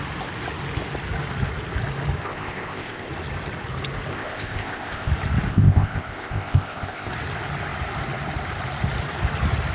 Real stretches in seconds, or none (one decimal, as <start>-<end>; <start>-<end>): 0.0-2.2; 3.1-4.1; 5.1-5.5; 7.1-9.7